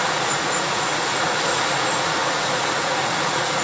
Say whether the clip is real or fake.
fake